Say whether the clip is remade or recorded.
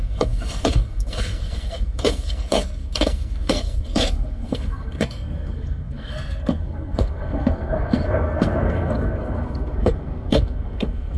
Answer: remade